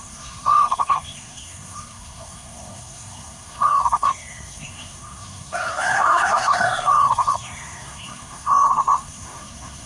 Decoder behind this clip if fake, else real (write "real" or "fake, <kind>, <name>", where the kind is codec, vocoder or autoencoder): fake, codec, SNAC